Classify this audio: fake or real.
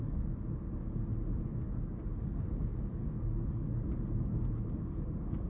real